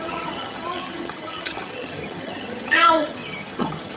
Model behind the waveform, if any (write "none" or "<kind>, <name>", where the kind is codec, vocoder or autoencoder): vocoder, HiFi-GAN